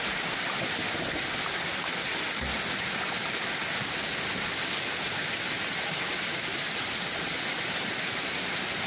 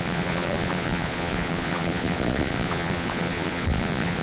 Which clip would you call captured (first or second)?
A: first